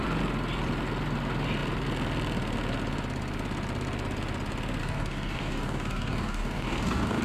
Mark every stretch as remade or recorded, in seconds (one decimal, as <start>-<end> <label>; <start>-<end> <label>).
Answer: 0.0-4.8 recorded; 4.8-7.2 remade